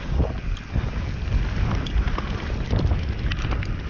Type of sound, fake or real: real